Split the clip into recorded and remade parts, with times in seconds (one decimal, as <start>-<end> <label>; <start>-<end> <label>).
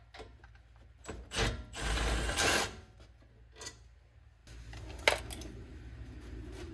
0.0-6.7 recorded